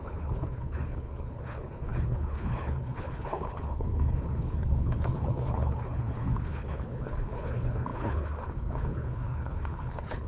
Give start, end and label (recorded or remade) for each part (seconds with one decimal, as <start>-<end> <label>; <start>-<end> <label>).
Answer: 0.0-10.3 remade